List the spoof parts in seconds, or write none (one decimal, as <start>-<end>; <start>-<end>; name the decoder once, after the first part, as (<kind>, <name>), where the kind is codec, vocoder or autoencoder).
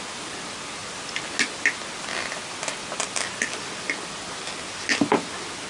none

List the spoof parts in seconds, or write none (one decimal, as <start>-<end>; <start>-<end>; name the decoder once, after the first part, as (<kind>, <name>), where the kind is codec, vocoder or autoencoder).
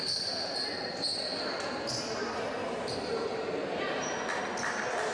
1.1-4.2 (vocoder, BigVGAN v2)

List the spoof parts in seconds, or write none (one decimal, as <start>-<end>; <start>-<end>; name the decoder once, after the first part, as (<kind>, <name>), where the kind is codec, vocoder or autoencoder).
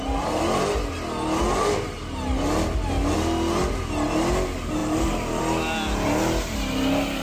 4.8-5.4 (vocoder, BigVGAN v2)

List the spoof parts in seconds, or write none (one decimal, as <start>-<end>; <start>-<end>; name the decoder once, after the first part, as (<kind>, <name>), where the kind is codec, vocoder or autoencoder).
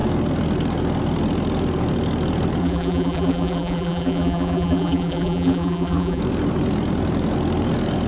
2.6-6.2 (vocoder, BigVGAN v2)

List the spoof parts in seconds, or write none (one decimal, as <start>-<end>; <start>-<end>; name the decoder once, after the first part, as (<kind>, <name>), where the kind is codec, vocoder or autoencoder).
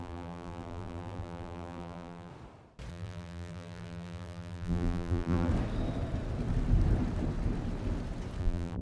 0.0-2.3 (vocoder, BigVGAN v2); 2.9-5.5; 8.4-8.8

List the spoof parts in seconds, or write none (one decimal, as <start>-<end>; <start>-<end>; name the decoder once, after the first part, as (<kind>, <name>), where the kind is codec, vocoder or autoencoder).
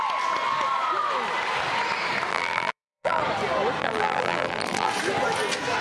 2.3-3.2 (vocoder, BigVGAN v2); 3.8-4.9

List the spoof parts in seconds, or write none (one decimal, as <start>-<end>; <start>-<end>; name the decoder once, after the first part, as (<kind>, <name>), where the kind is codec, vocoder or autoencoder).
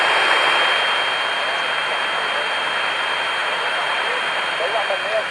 3.4-4.2 (vocoder, BigVGAN v2)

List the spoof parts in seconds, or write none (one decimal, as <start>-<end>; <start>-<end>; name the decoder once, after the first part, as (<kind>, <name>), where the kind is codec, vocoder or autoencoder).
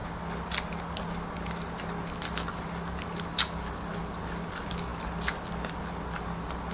none